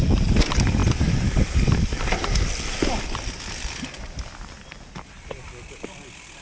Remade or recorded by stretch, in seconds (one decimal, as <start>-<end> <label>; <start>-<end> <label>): 0.0-6.4 recorded